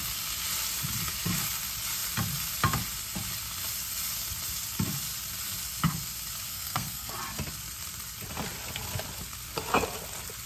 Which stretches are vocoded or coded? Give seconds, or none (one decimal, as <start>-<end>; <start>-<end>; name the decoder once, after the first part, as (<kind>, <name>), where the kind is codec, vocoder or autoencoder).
6.5-7.1 (codec, SNAC)